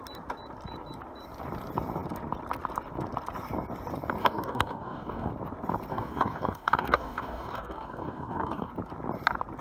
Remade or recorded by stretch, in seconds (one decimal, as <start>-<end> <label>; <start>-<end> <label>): 0.0-4.2 recorded; 4.2-5.3 remade; 5.3-5.9 recorded; 5.9-8.7 remade; 8.7-9.6 recorded